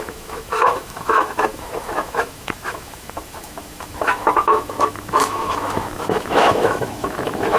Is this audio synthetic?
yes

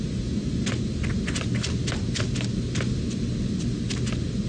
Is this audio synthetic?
no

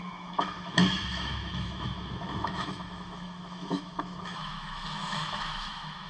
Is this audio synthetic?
yes